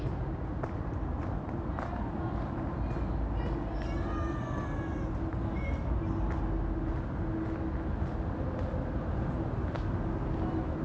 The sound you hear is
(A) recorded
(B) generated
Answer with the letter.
A